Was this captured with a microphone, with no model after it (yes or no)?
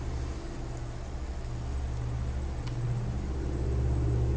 yes